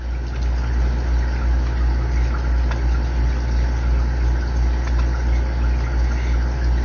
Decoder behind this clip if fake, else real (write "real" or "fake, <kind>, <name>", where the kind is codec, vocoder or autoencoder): real